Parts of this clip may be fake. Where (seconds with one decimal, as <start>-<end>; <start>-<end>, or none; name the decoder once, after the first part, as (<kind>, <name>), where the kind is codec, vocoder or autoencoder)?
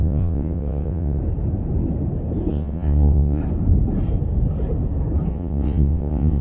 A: 0.0-1.2 (vocoder, WaveNeXt); 2.5-3.4; 5.3-6.4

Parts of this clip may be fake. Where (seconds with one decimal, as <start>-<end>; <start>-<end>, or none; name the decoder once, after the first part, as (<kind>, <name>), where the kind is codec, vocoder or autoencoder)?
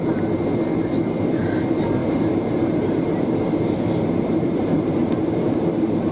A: 2.0-5.4 (vocoder, BigVGAN v2)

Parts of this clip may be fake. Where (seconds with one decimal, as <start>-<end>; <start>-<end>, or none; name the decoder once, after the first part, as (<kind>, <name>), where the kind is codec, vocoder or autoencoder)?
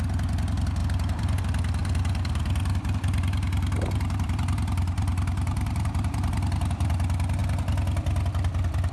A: 0.8-1.4 (vocoder, BigVGAN v2); 1.8-6.9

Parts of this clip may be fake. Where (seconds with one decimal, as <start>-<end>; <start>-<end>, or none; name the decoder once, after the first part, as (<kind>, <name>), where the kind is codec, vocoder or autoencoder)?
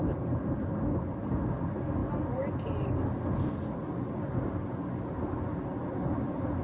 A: none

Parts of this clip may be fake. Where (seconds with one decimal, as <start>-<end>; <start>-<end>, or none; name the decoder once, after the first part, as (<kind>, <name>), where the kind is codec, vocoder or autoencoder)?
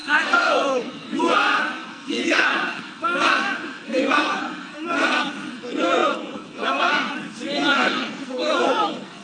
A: 0.0-9.2 (codec, SNAC)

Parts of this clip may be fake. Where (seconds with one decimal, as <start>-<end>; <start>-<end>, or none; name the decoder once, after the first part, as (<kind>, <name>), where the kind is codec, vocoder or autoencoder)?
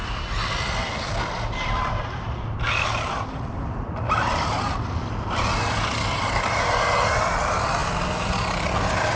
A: none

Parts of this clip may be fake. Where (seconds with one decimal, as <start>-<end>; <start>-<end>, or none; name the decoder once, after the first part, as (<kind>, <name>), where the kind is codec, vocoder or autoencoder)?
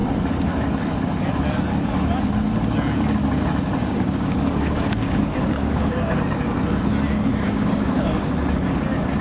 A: 3.8-6.1 (codec, DAC); 7.3-8.3